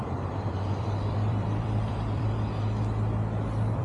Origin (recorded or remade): remade